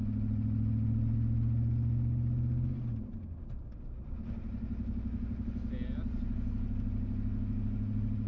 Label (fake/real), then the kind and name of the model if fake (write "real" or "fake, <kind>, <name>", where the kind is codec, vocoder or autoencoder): real